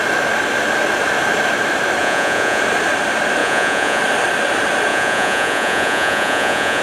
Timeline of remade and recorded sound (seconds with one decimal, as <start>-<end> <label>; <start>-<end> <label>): 0.0-2.0 recorded; 2.0-2.6 remade; 2.6-3.4 recorded; 3.4-4.0 remade; 4.0-4.9 recorded; 4.9-6.8 remade